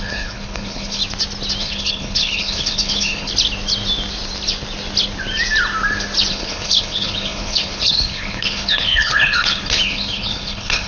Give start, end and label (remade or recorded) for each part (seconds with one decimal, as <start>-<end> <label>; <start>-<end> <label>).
0.0-1.0 remade; 1.0-1.6 recorded; 1.6-3.3 remade; 3.3-6.3 recorded; 6.3-10.9 remade